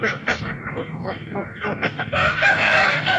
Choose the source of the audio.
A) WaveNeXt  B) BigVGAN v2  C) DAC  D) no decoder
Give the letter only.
C